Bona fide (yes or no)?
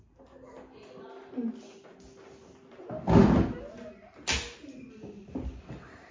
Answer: yes